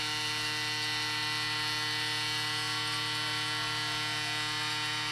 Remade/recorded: recorded